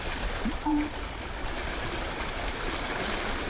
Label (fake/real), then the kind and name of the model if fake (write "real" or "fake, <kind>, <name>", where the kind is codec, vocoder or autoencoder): real